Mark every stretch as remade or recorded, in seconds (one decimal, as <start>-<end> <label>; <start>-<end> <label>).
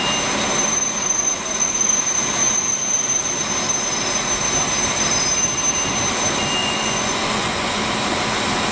0.0-1.0 recorded; 1.0-2.0 remade; 2.0-6.6 recorded; 6.6-7.8 remade; 7.8-8.7 recorded